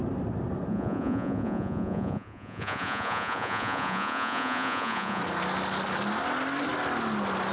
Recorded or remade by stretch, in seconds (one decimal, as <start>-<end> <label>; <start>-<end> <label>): 0.0-0.7 recorded; 0.7-5.2 remade; 5.2-7.5 recorded